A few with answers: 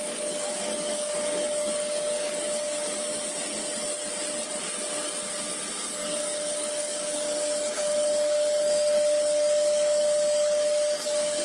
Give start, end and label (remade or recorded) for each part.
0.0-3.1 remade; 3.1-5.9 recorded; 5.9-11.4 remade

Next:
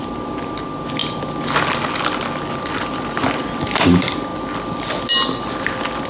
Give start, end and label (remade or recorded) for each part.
0.0-6.1 recorded

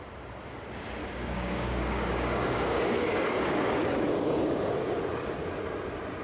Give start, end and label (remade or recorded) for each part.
0.0-1.0 recorded; 1.0-4.7 remade; 4.7-6.2 recorded

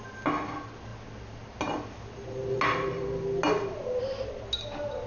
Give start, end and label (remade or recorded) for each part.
0.0-5.1 recorded

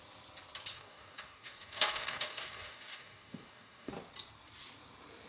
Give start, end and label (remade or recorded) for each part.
0.0-0.7 recorded; 0.7-3.9 remade; 3.9-5.3 recorded

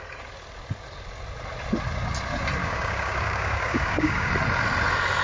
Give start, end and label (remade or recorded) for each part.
0.0-2.6 recorded; 2.6-4.3 remade; 4.3-5.2 recorded